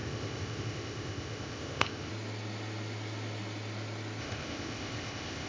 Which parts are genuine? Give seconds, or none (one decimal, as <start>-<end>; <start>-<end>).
2.1-4.2